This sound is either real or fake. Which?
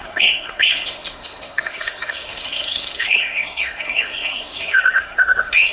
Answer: fake